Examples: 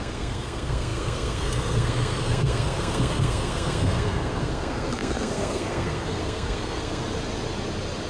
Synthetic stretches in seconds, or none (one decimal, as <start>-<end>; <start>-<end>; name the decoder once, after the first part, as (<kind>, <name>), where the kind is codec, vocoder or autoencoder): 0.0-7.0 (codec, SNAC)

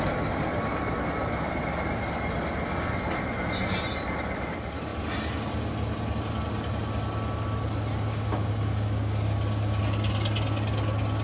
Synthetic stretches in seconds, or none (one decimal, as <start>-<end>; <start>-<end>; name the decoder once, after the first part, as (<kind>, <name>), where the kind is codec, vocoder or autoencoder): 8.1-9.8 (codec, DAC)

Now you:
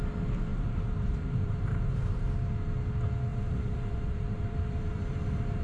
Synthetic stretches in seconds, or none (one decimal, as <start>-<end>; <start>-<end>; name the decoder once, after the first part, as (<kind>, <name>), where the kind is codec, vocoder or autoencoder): 0.5-2.2 (vocoder, BigVGAN v2); 3.3-5.6